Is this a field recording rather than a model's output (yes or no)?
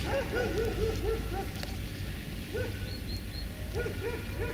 yes